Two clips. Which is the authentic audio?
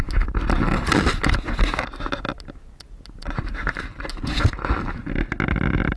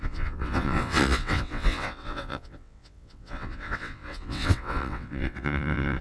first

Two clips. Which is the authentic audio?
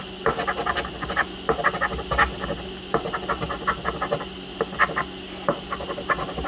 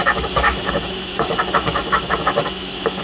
first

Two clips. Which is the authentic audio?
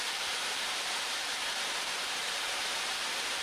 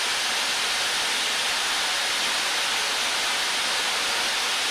second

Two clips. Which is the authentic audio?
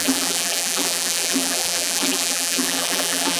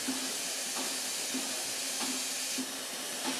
second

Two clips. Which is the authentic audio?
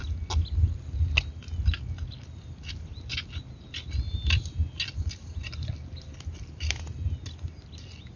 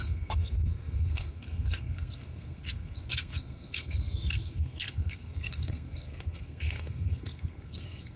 first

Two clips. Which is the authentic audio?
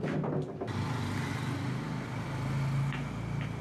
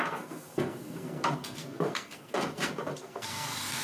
first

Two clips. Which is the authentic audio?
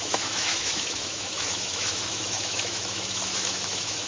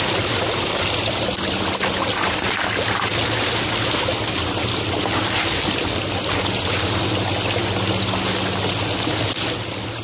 second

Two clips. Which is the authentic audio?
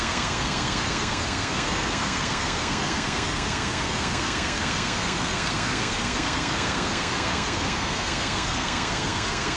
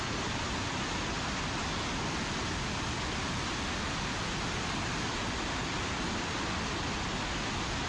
second